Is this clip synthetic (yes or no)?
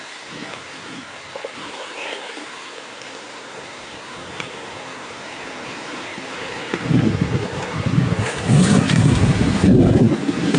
yes